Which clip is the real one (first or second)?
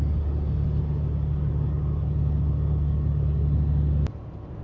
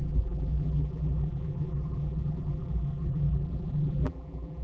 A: first